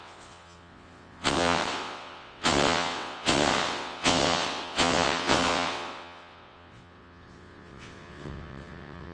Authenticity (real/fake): fake